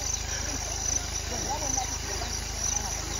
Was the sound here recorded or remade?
recorded